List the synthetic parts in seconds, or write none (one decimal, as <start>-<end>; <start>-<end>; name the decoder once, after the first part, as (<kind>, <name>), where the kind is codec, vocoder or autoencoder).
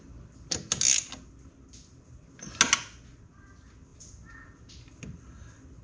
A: none